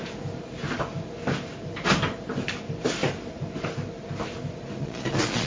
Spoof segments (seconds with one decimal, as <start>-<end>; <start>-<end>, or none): 4.8-5.5